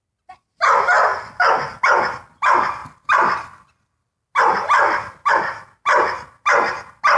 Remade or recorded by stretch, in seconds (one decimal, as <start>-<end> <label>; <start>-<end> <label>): 0.0-7.2 recorded